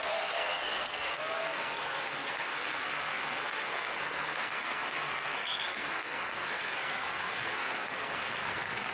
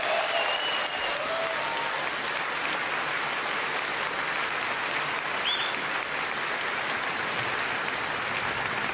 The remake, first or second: first